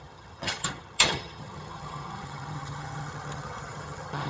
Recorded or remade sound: remade